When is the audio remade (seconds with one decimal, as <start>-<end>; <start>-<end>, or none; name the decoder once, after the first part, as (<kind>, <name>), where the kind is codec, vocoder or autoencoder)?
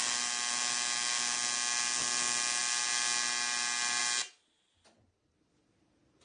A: none